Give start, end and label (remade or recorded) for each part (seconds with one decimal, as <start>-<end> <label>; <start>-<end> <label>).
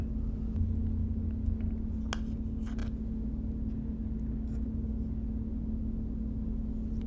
0.0-7.1 recorded